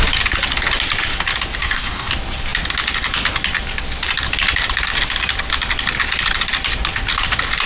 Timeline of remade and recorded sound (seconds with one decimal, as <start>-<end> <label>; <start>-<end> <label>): 0.0-1.6 recorded; 1.6-2.1 remade; 2.1-7.7 recorded